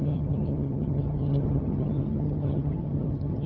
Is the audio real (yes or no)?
no